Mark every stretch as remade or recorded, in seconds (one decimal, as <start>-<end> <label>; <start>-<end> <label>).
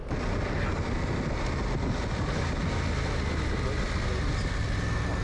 0.0-5.2 recorded